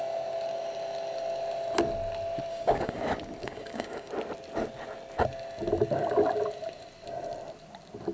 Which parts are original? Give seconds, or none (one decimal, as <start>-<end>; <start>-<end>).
0.0-2.5; 3.0-3.4; 4.1-8.1